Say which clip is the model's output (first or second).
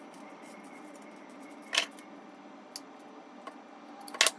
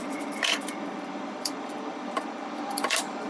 second